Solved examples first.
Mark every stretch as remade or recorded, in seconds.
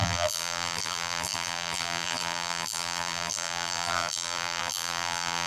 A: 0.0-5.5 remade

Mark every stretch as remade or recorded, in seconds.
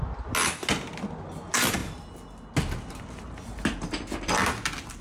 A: 0.0-5.0 recorded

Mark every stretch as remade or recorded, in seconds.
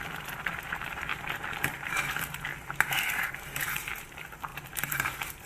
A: 0.0-1.1 remade; 1.1-1.7 recorded; 1.7-2.5 remade; 2.5-3.6 recorded; 3.6-5.5 remade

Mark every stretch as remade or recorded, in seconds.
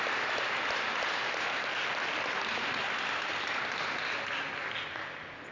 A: 0.0-1.2 recorded; 1.2-4.5 remade; 4.5-5.5 recorded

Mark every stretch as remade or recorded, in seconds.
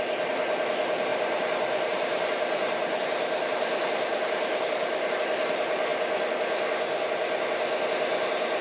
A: 0.0-1.1 recorded; 1.1-5.2 remade; 5.2-8.6 recorded